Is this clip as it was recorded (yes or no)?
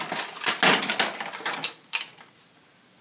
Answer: yes